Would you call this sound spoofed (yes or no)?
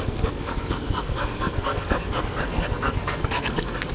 yes